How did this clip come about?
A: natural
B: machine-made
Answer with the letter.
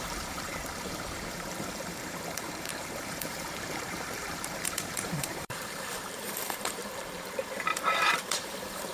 B